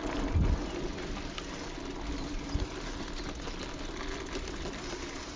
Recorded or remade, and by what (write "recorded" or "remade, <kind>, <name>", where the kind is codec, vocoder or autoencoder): recorded